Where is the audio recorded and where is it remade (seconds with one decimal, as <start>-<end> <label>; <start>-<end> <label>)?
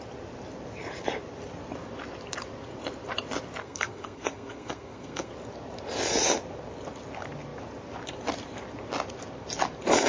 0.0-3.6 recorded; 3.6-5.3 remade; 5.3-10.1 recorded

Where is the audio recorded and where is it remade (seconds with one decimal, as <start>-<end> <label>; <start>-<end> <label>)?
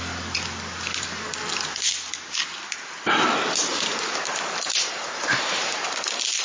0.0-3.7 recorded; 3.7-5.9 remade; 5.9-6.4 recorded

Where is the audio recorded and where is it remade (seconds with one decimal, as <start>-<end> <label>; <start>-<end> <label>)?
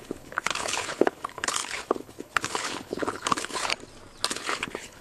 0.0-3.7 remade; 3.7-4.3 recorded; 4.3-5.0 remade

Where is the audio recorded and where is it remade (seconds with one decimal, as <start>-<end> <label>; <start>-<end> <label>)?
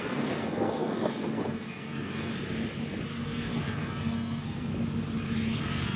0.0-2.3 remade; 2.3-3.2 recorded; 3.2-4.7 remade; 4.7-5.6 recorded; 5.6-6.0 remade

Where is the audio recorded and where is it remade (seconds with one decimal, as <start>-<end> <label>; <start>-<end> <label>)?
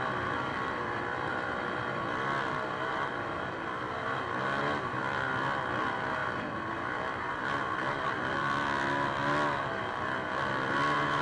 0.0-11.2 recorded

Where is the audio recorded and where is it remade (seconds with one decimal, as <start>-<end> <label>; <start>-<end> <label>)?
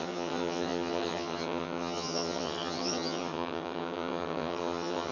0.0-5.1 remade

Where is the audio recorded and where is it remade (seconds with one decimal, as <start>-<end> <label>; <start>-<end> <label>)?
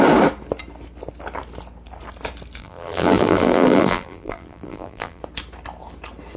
0.0-2.6 recorded; 2.6-5.2 remade; 5.2-6.4 recorded